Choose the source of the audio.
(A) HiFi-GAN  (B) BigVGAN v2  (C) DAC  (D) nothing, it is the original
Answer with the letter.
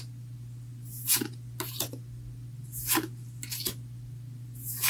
D